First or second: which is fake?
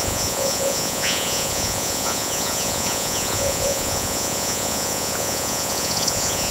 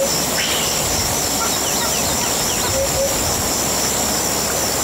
first